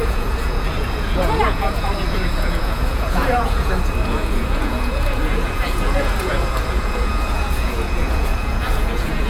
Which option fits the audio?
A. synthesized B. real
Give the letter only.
A